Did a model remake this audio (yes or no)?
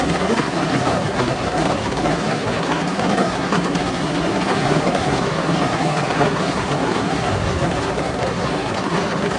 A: yes